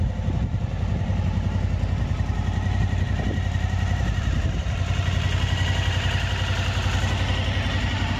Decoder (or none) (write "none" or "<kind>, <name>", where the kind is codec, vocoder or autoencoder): none